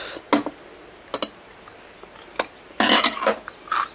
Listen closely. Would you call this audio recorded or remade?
recorded